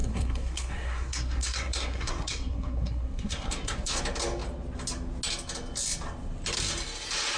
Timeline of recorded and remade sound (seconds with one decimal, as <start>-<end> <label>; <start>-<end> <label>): 0.0-4.0 remade; 4.0-7.4 recorded